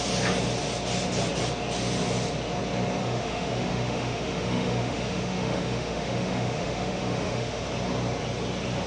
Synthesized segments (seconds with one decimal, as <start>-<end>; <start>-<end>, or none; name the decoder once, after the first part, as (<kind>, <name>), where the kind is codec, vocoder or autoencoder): 3.0-7.6 (autoencoder, DAC-VAE)